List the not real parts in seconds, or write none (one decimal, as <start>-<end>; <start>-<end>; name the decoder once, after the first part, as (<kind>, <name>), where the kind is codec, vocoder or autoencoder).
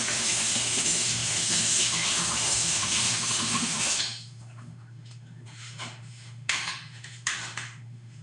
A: 0.0-8.2 (autoencoder, DAC-VAE)